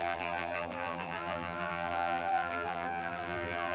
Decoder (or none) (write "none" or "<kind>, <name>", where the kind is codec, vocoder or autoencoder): vocoder, BigVGAN v2